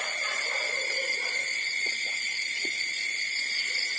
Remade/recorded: remade